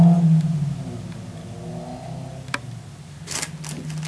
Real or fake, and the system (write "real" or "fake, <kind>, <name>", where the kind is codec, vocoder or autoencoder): real